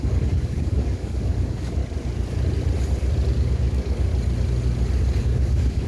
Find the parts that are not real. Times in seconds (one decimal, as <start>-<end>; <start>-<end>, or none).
0.0-1.8; 3.3-4.1; 5.2-5.9